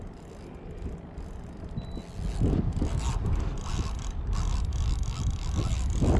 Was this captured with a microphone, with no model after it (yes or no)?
yes